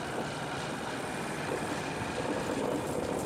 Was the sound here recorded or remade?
recorded